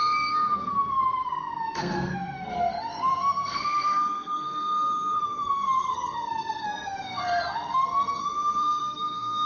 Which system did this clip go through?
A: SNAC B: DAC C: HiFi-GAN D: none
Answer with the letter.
A